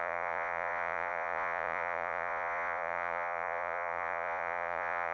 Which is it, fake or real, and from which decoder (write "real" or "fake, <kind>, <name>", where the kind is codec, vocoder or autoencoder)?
fake, vocoder, Vocos